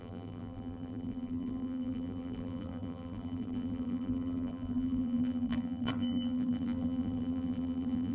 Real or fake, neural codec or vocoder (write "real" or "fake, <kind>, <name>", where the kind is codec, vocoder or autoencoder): fake, vocoder, BigVGAN v2